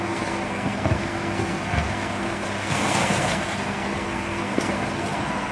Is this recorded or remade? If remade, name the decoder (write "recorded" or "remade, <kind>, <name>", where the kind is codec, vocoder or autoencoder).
remade, codec, SNAC